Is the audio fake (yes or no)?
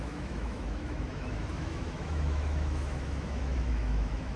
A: yes